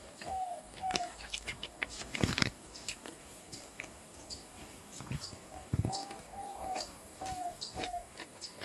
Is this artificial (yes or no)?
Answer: yes